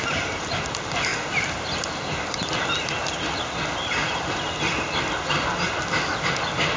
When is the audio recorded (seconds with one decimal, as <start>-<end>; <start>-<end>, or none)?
0.0-6.8